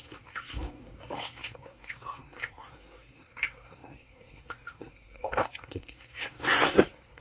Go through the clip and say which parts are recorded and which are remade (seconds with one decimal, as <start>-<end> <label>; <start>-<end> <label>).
0.0-7.2 remade